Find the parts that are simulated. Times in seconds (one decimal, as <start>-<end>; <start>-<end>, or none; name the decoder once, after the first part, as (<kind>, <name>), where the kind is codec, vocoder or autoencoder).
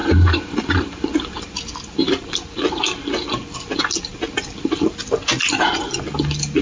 0.0-1.3 (vocoder, BigVGAN v2)